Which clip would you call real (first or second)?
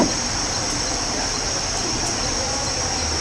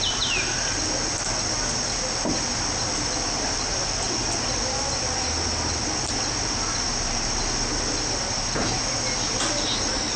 second